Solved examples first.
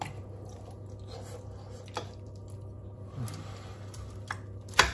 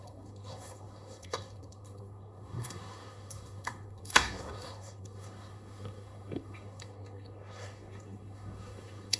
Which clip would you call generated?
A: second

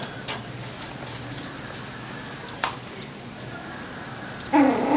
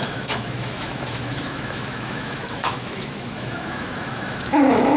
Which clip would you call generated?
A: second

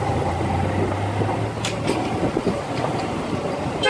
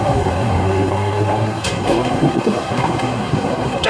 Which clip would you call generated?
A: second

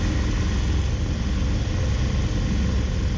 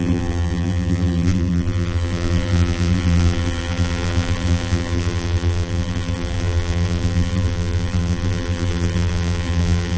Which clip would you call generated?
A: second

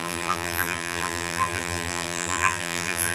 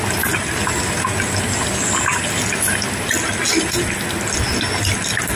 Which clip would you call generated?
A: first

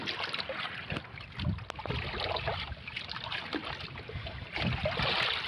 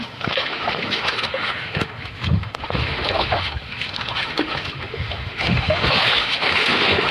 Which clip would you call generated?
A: second